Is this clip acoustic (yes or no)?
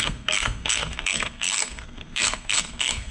no